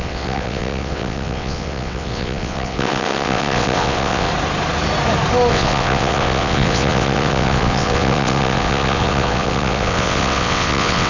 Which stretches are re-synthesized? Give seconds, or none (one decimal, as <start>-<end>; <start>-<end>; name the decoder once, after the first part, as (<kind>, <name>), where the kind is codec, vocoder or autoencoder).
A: 0.0-4.3 (vocoder, WaveNeXt); 5.5-11.1

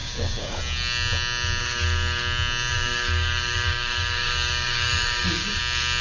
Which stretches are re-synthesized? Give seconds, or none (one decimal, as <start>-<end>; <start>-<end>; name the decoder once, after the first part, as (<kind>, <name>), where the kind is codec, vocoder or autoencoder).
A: 0.0-0.6 (codec, DAC); 2.7-5.6

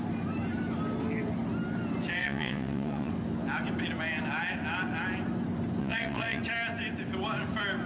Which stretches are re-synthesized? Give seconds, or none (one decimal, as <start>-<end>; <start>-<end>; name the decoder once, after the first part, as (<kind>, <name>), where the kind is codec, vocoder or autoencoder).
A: 2.2-3.1 (vocoder, WaveNeXt); 5.8-6.4

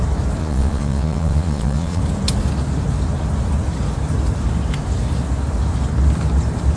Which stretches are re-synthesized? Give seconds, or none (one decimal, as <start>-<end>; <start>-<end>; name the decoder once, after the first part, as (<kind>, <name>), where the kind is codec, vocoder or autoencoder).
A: 0.4-2.0 (vocoder, Vocos)